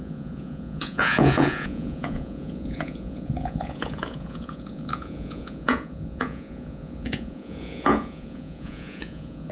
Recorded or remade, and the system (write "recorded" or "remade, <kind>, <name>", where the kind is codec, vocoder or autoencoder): remade, vocoder, Vocos